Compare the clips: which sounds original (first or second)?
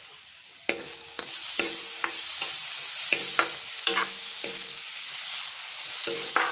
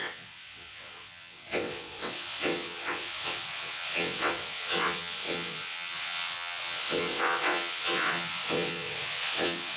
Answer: first